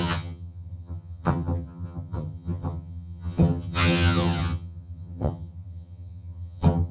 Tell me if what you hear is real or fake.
fake